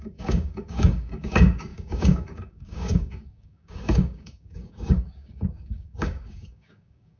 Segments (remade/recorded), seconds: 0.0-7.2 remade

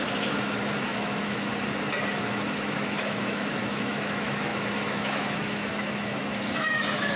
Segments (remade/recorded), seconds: 0.0-1.5 remade; 1.5-2.1 recorded; 2.1-7.2 remade

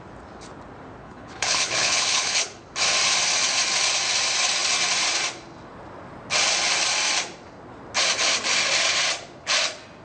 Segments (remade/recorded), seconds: 0.0-1.0 recorded; 1.0-2.6 remade; 2.6-10.0 recorded

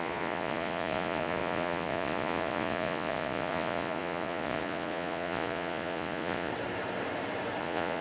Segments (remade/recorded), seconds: 0.0-6.5 remade; 6.5-7.6 recorded; 7.6-8.0 remade

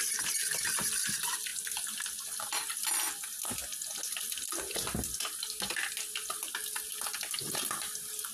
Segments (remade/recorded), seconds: 0.0-8.3 recorded

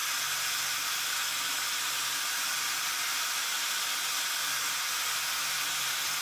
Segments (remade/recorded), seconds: 0.0-6.2 recorded

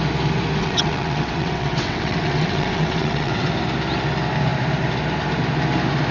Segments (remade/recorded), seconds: 0.0-0.6 recorded; 0.6-3.5 remade; 3.5-6.1 recorded